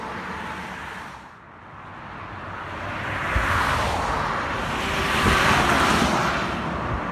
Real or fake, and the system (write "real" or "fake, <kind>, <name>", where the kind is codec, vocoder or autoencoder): real